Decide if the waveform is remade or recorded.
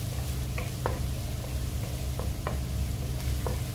recorded